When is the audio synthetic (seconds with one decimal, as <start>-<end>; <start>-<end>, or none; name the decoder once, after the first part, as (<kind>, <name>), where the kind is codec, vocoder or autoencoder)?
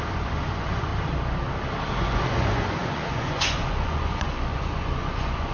0.0-0.9 (vocoder, Vocos); 1.9-5.5